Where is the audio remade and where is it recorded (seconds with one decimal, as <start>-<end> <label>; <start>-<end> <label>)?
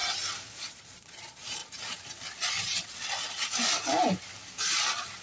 0.0-0.5 recorded; 0.5-1.6 remade; 1.6-4.7 recorded; 4.7-5.2 remade